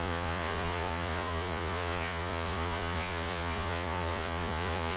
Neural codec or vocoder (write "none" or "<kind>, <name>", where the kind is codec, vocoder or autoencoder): vocoder, Vocos